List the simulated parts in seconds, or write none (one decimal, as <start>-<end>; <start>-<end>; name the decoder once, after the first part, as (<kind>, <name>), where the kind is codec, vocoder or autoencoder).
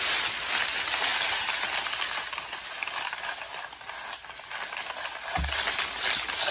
none